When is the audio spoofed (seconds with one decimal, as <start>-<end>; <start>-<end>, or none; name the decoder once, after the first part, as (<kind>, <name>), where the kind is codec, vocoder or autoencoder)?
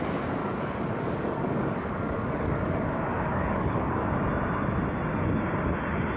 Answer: 0.4-4.1 (codec, DAC)